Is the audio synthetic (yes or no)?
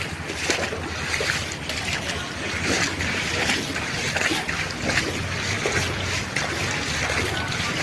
no